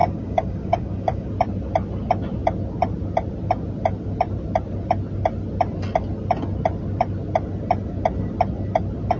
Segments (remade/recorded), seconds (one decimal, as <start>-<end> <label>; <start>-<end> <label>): 0.0-1.3 remade; 1.3-9.2 recorded